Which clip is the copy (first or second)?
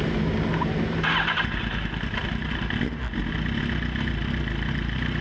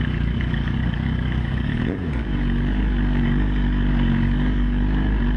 second